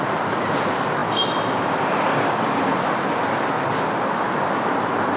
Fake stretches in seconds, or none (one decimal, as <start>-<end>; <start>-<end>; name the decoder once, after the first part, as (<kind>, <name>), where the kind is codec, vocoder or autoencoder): none